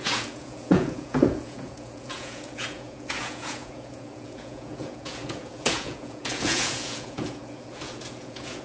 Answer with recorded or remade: remade